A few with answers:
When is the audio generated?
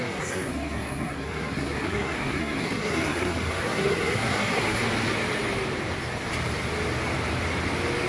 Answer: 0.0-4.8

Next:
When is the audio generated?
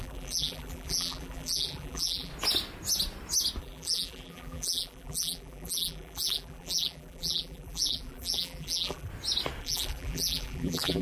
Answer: 0.0-2.3; 3.6-9.1; 9.6-11.0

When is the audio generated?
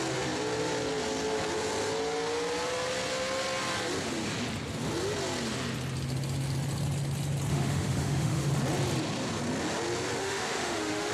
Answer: 7.5-8.5; 10.2-11.1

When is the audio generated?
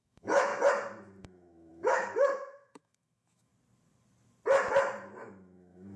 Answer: 0.0-0.5; 1.2-3.5; 5.2-6.0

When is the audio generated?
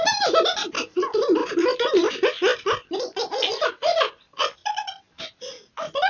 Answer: 1.4-2.1; 2.5-5.3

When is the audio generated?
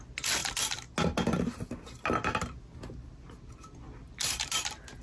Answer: none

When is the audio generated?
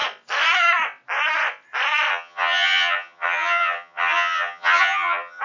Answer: 2.1-5.4